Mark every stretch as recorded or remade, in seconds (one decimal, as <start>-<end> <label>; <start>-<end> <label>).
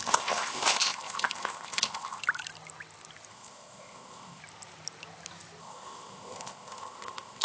0.0-2.2 remade; 2.2-3.3 recorded; 3.3-4.4 remade; 4.4-5.6 recorded; 5.6-7.4 remade